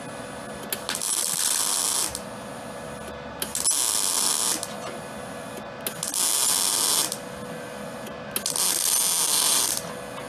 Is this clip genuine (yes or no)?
yes